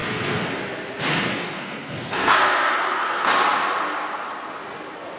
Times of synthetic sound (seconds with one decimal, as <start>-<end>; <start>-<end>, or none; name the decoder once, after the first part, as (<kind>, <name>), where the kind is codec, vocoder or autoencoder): 0.0-0.6 (codec, SNAC); 1.1-3.3